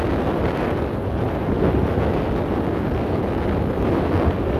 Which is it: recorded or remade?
recorded